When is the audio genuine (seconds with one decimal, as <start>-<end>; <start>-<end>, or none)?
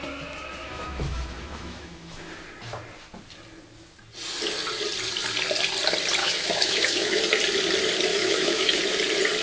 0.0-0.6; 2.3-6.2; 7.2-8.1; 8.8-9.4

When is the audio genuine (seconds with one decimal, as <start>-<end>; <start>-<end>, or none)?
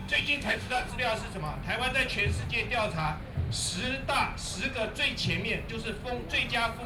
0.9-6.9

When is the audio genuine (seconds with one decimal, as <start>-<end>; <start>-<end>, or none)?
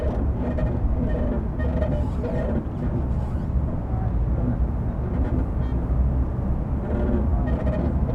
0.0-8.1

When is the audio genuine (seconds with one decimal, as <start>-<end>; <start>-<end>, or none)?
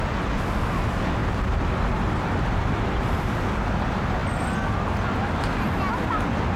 0.0-6.6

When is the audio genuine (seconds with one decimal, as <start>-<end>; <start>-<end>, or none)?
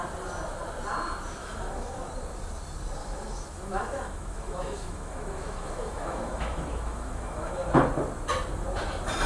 0.0-1.4; 2.1-3.0; 7.7-9.3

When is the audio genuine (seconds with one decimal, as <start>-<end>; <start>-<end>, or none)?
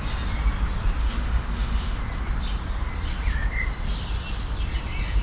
0.0-1.0; 2.0-5.2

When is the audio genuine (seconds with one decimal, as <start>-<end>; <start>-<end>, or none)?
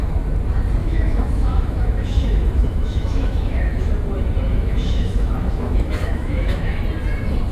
0.0-0.8; 3.9-4.5; 6.8-7.5